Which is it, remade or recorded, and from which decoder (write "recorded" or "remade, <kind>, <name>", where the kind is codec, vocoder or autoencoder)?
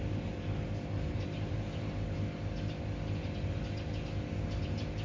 recorded